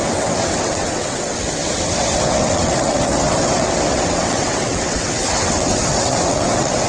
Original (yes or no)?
no